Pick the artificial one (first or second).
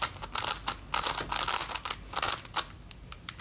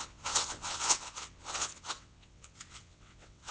second